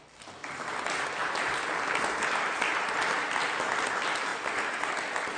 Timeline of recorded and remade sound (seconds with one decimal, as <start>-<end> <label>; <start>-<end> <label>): 0.0-4.3 recorded; 4.3-4.9 remade; 4.9-5.4 recorded